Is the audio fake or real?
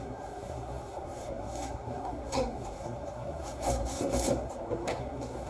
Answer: fake